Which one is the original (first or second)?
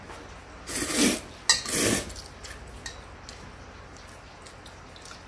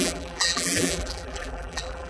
first